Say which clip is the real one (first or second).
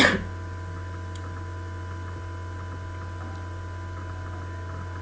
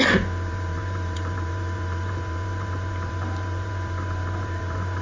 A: first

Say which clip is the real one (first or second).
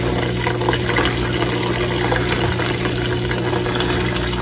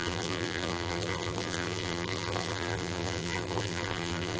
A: first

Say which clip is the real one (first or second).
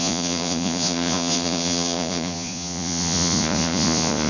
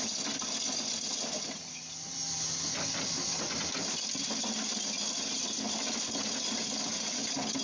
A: second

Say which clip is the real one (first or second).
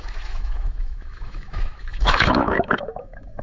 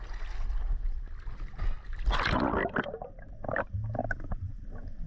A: second